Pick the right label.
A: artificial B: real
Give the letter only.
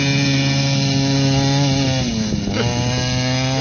B